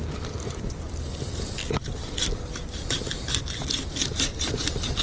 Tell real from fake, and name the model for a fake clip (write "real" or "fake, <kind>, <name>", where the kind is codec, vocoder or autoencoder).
real